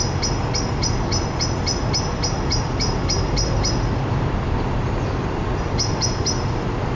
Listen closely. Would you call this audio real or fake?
real